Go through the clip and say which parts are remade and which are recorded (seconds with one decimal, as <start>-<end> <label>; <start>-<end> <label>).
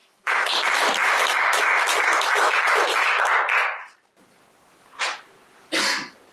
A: 0.0-0.5 remade; 0.5-1.0 recorded; 1.0-3.3 remade; 3.3-6.3 recorded